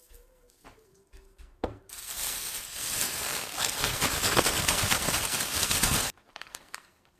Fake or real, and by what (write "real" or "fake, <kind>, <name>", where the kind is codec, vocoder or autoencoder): fake, codec, SNAC